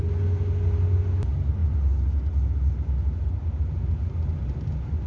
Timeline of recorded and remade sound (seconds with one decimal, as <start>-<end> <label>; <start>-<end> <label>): 0.0-5.1 recorded